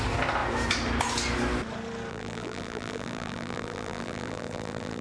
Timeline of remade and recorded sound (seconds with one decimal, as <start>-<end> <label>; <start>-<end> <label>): 0.0-2.1 recorded; 2.1-5.0 remade